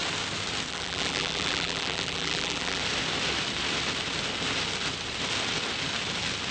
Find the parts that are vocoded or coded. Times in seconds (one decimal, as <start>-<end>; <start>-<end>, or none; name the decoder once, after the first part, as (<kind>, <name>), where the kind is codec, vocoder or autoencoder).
0.7-2.8 (vocoder, BigVGAN v2)